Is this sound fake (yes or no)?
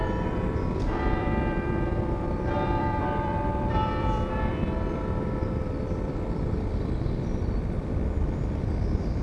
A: yes